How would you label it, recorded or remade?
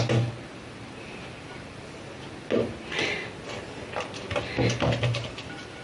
recorded